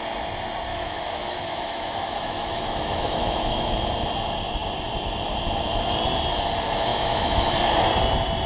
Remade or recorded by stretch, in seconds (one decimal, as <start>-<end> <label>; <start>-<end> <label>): 0.0-0.7 recorded; 0.7-3.8 remade; 3.8-6.9 recorded; 6.9-7.5 remade; 7.5-8.5 recorded